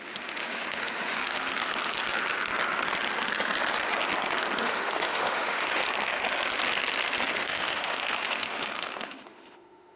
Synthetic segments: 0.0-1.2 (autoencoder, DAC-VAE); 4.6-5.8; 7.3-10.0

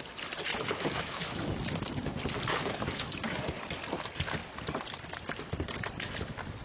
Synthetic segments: 0.5-2.1 (autoencoder, DAC-VAE); 2.5-3.4

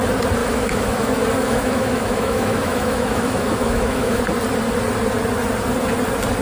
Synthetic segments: 0.4-4.2 (autoencoder, DAC-VAE)